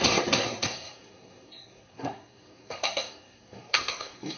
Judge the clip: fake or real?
fake